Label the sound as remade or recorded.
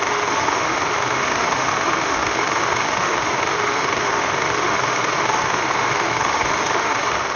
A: remade